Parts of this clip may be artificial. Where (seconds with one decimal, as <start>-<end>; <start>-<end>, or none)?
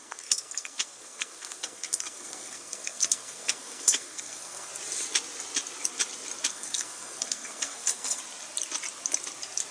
0.0-4.7; 6.5-8.2